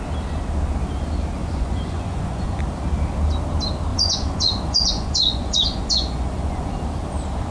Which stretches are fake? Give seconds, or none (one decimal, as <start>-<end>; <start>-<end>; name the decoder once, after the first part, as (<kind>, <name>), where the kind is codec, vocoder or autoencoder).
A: 1.4-2.6 (vocoder, Vocos); 3.9-6.7